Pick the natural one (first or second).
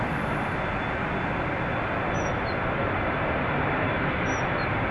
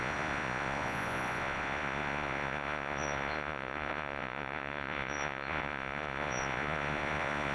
first